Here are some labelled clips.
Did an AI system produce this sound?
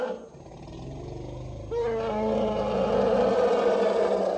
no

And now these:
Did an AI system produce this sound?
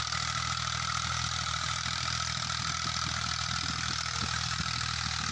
no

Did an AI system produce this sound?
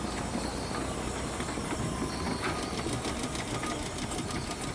no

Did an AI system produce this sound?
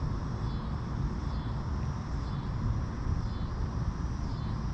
no